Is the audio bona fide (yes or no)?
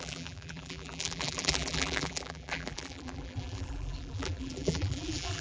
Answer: no